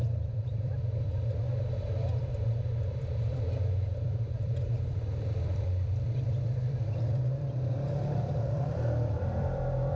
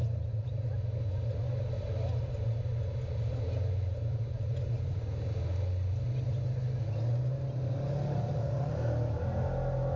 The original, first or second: second